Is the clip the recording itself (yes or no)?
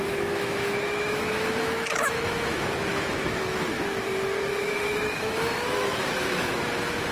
no